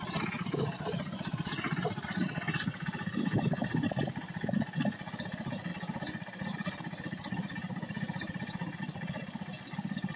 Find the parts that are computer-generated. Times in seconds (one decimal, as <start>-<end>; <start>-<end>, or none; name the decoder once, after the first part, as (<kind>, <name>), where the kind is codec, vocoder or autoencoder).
none